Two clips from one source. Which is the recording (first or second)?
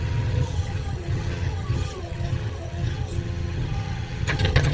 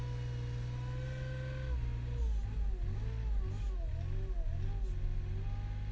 second